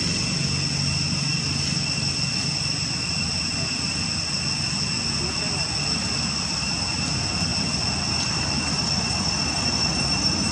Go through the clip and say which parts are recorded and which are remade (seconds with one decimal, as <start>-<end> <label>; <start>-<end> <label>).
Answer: 0.0-10.5 recorded